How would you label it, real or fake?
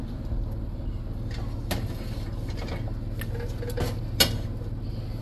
real